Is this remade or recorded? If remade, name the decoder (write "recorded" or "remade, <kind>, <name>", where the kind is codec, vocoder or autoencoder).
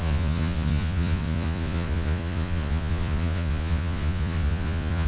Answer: remade, vocoder, Vocos